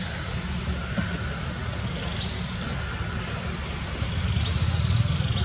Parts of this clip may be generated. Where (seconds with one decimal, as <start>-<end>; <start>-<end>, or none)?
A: none